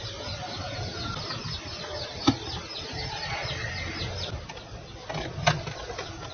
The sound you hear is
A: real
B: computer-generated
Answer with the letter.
A